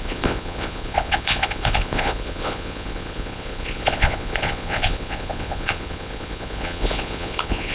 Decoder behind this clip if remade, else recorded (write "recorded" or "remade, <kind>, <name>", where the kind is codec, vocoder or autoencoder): remade, vocoder, Vocos